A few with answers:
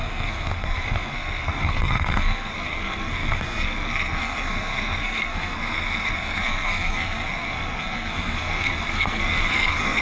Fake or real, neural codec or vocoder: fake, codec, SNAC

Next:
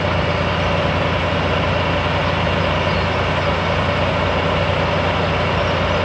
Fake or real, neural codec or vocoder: real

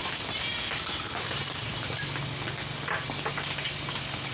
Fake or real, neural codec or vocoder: real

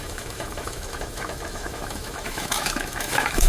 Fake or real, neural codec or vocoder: fake, autoencoder, DAC-VAE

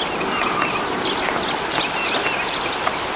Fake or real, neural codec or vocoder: real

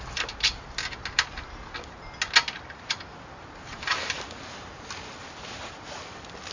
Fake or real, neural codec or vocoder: real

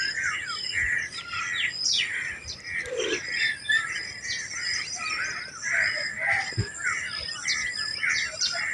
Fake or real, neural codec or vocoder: real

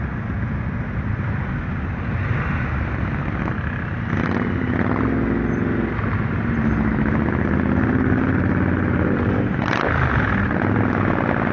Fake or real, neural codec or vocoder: real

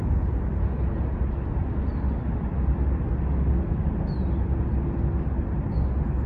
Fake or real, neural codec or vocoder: real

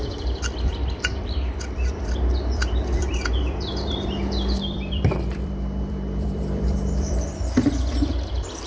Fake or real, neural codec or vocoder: fake, vocoder, BigVGAN v2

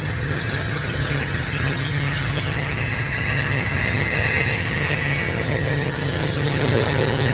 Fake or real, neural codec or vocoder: fake, vocoder, HiFi-GAN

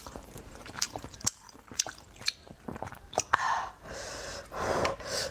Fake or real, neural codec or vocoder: fake, vocoder, BigVGAN v2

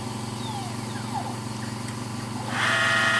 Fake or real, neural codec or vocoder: real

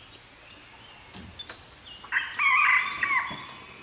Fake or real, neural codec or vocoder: real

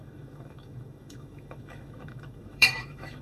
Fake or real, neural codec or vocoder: fake, autoencoder, DAC-VAE